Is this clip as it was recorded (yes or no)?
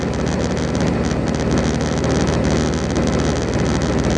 yes